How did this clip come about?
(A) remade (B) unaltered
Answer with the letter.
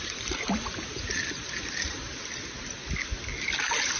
B